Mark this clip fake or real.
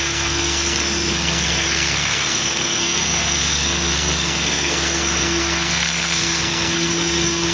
fake